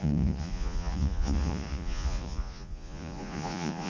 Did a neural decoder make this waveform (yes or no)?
yes